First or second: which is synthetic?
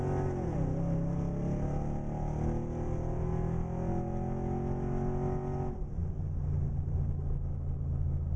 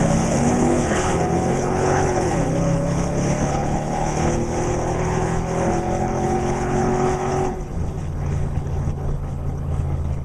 second